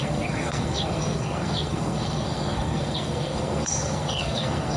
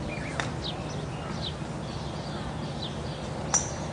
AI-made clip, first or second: first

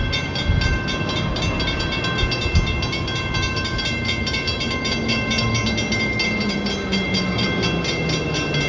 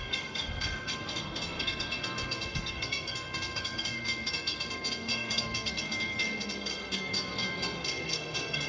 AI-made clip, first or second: second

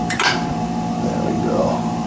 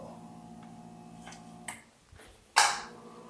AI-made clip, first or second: first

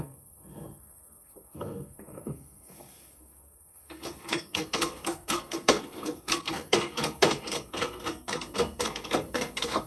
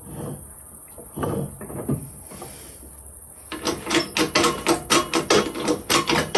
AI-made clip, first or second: first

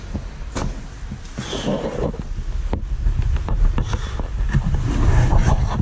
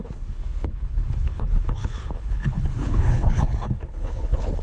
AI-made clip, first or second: second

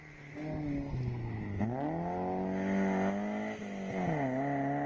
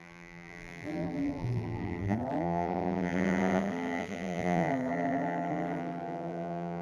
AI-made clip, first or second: second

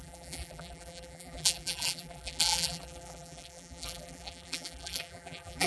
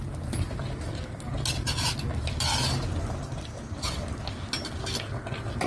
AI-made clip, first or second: first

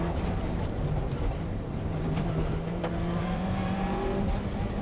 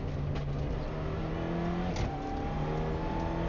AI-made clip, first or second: first